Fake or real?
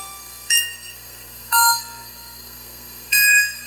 fake